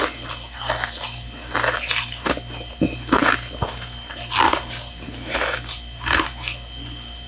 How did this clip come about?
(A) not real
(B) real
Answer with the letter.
B